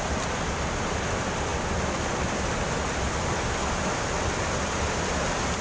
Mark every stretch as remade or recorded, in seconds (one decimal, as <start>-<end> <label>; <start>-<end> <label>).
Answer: 0.0-5.6 recorded